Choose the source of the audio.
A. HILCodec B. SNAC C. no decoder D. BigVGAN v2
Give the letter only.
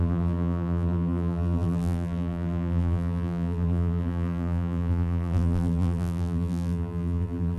D